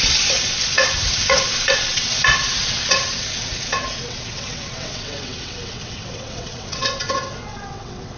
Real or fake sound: fake